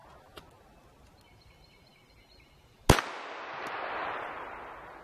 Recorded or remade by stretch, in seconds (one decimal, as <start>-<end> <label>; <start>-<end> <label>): 0.0-5.0 recorded

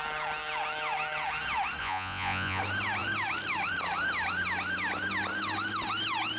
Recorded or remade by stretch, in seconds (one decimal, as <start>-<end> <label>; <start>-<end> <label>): 0.0-1.8 recorded; 1.8-2.6 remade; 2.6-6.4 recorded

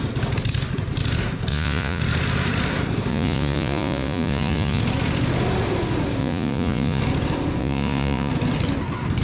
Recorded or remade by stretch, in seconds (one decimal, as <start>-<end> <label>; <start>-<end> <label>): 0.0-1.5 recorded; 1.5-2.0 remade; 2.0-3.1 recorded; 3.1-4.8 remade; 4.8-6.2 recorded; 6.2-7.0 remade; 7.0-7.6 recorded; 7.6-8.3 remade; 8.3-9.2 recorded

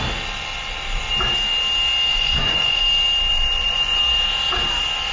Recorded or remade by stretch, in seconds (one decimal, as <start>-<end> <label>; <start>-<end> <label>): 0.0-2.1 recorded; 2.1-2.8 remade; 2.8-3.3 recorded; 3.3-4.0 remade; 4.0-5.1 recorded

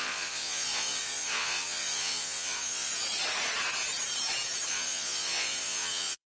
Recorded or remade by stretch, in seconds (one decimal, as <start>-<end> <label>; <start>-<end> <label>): 0.0-2.9 remade; 2.9-4.7 recorded; 4.7-6.3 remade